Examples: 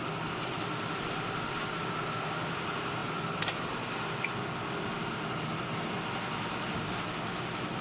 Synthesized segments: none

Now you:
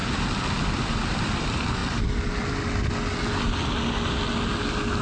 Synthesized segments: 0.6-1.8 (vocoder, BigVGAN v2)

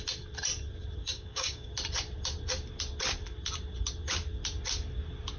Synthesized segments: 1.0-1.7 (codec, DAC)

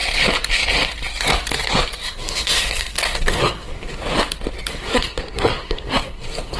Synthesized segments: 2.0-4.0 (codec, SNAC); 4.7-6.6